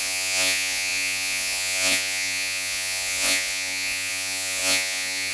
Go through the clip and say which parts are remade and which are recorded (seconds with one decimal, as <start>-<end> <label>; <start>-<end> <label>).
0.0-5.3 remade